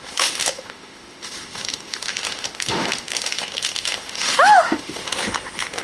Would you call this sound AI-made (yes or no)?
yes